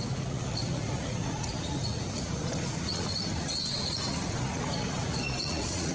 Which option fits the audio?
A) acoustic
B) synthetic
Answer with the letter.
B